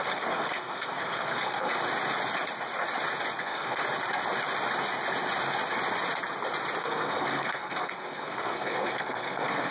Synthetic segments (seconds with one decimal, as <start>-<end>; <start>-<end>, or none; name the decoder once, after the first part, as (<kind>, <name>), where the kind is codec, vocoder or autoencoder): 0.0-1.7 (codec, SNAC); 3.4-3.8; 6.8-9.7